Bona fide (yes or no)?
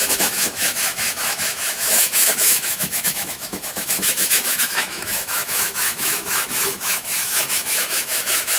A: no